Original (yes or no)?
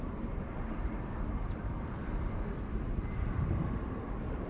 no